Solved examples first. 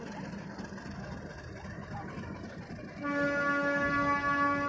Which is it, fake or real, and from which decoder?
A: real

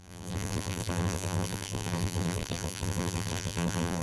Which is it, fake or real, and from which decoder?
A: fake, vocoder, BigVGAN v2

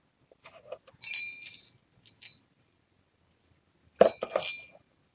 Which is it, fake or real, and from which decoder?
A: real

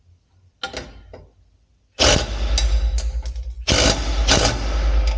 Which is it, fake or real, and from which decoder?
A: real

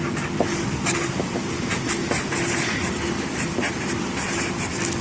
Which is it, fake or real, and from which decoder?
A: real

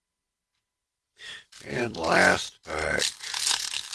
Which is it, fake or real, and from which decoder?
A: fake, vocoder, BigVGAN v2